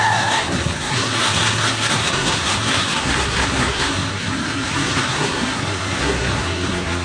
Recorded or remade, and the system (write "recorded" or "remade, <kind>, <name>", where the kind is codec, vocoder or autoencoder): remade, codec, SNAC